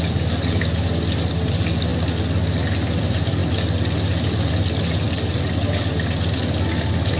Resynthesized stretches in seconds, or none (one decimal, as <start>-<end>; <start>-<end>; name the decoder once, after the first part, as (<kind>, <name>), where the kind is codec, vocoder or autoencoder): none